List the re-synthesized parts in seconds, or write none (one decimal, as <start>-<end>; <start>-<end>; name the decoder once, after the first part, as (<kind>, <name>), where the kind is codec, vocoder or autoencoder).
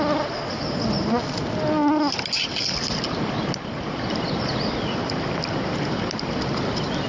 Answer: none